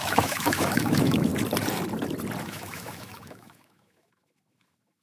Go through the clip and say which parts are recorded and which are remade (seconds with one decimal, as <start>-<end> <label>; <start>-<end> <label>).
0.0-1.3 remade; 1.3-2.4 recorded; 2.4-5.0 remade

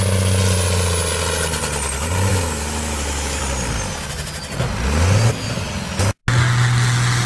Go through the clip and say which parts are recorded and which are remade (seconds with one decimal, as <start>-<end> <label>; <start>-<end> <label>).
0.0-2.3 recorded; 2.3-3.4 remade; 3.4-7.3 recorded

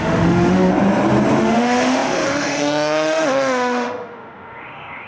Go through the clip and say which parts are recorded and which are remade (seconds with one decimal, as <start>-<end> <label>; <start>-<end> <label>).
0.0-0.7 remade; 0.7-1.4 recorded; 1.4-5.1 remade

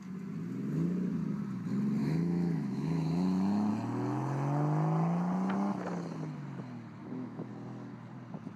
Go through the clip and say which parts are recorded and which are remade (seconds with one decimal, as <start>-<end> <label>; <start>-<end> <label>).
0.0-2.0 recorded; 2.0-3.7 remade; 3.7-7.0 recorded; 7.0-7.5 remade; 7.5-8.6 recorded

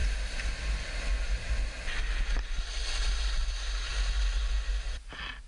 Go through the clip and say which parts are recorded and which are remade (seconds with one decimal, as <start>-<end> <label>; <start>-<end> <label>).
0.0-5.5 recorded

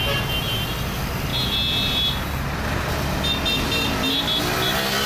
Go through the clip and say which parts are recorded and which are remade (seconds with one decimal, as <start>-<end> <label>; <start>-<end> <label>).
0.0-5.1 recorded